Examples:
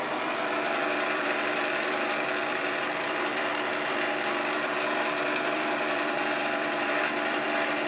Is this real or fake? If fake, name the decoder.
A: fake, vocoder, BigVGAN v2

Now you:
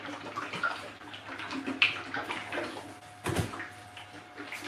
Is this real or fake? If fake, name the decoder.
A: real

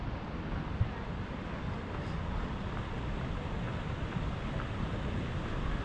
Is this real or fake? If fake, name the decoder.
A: real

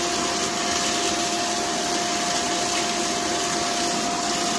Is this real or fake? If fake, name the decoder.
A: real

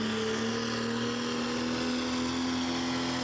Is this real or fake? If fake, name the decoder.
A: real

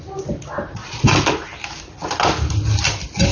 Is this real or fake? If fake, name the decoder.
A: fake, vocoder, BigVGAN v2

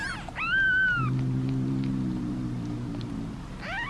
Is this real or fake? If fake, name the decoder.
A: real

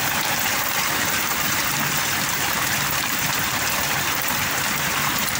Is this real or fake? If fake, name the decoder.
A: fake, vocoder, BigVGAN v2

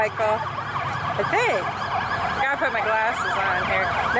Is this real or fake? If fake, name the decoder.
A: real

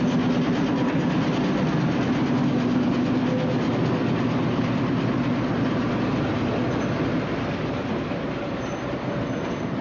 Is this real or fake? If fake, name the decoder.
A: real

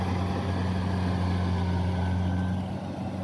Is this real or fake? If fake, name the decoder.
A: real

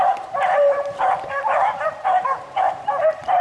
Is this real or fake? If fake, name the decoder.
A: fake, vocoder, BigVGAN v2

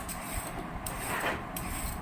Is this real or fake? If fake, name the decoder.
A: real